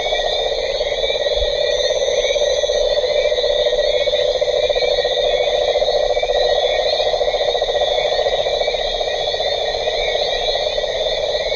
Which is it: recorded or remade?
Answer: recorded